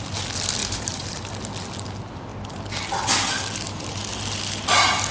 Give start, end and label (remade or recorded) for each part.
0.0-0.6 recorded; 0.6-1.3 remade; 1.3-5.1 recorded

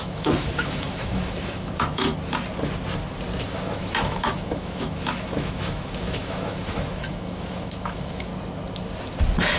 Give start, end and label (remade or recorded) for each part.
0.0-2.1 remade; 2.1-3.4 recorded; 3.4-8.3 remade; 8.3-9.6 recorded

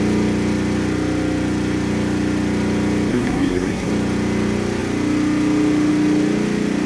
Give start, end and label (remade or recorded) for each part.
0.0-3.1 recorded; 3.1-3.9 remade; 3.9-6.9 recorded